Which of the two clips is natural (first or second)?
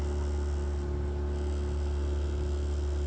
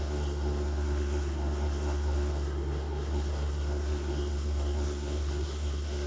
first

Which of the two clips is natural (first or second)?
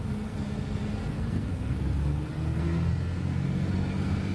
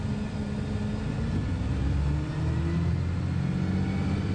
second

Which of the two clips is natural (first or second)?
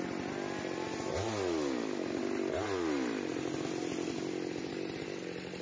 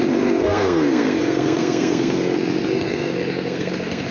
first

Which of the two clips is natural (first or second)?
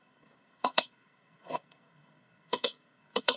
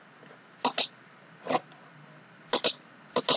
second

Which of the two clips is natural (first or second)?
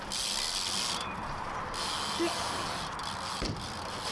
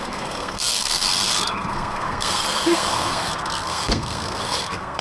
first